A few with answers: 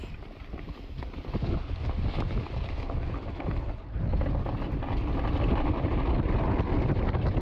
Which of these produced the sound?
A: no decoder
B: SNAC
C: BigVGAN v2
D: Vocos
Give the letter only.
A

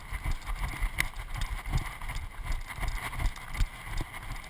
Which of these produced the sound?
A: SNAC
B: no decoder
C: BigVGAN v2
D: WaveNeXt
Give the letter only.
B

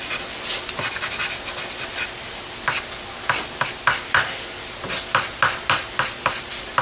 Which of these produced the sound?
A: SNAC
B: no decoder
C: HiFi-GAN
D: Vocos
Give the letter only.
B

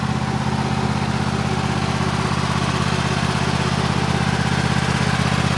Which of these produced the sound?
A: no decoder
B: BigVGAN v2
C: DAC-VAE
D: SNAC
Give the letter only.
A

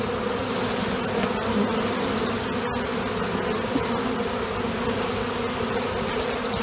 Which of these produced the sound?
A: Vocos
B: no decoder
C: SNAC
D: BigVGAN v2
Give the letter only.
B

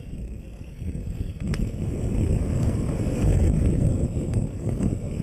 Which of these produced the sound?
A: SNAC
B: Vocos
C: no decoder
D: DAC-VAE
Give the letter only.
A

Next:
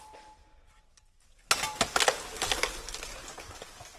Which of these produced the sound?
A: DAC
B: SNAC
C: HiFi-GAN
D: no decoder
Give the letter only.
D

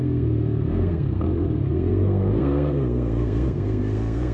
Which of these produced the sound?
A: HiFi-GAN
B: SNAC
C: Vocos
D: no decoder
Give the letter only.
B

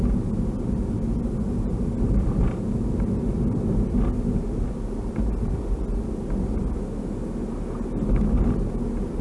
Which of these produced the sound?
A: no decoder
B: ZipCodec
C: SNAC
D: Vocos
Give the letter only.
A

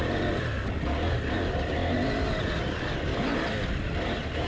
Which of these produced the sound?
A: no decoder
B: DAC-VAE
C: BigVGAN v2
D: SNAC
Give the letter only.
A